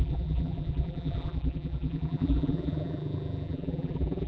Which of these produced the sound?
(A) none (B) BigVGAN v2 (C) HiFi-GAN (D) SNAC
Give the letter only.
B